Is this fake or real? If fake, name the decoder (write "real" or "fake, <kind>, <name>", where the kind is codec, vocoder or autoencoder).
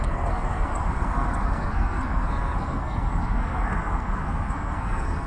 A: fake, codec, SNAC